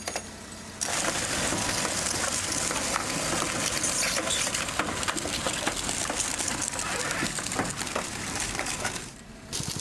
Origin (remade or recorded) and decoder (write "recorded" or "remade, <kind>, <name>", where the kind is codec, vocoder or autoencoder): recorded